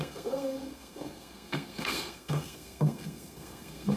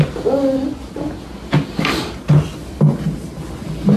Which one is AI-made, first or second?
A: first